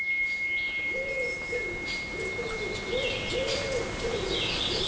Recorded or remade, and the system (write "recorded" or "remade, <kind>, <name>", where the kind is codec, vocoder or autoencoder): recorded